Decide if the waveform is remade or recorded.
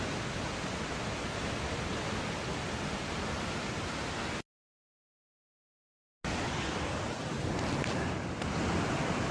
recorded